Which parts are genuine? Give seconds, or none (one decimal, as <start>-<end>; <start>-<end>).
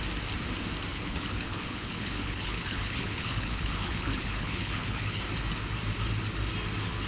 0.0-0.9; 5.2-7.1